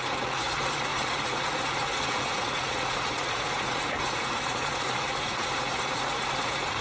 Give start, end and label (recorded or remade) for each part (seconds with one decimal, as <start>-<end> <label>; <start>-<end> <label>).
0.0-6.8 remade